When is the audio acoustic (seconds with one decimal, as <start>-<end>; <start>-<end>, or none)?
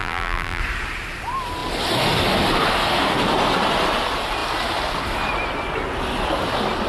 0.6-6.9